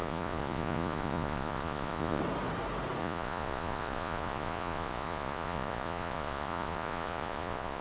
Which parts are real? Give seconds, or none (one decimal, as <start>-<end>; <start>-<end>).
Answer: 2.2-3.0